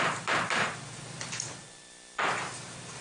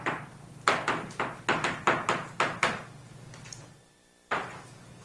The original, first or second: second